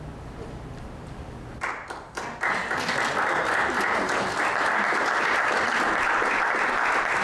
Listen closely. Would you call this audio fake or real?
real